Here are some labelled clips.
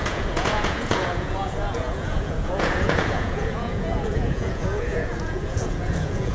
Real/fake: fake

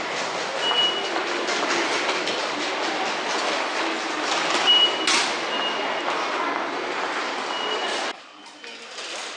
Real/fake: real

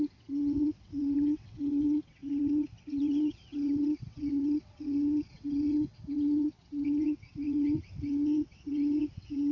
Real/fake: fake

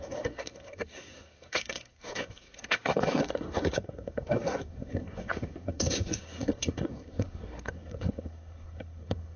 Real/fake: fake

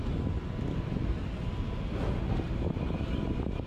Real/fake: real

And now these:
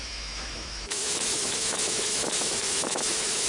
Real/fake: fake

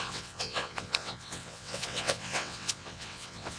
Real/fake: fake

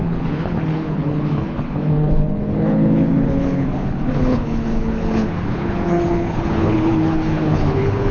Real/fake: fake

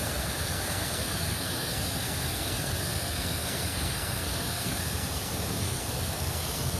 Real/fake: fake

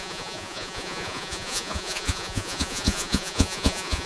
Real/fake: fake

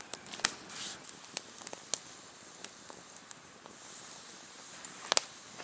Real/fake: real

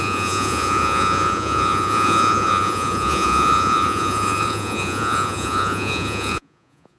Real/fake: fake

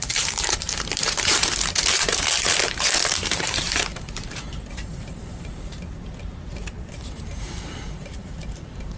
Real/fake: fake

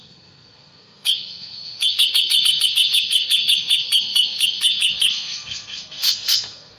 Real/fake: fake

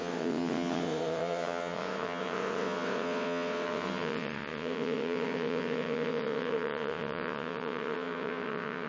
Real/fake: fake